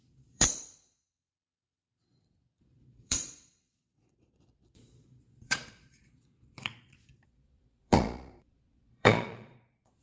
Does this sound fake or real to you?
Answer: fake